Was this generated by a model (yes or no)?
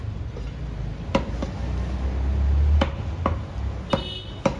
no